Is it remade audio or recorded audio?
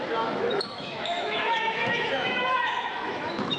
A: remade